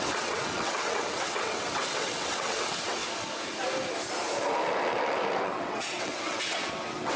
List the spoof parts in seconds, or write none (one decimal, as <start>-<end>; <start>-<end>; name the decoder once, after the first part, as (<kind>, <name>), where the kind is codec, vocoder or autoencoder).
0.0-3.0 (vocoder, WaveNeXt); 5.4-7.2